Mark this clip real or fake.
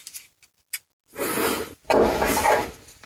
real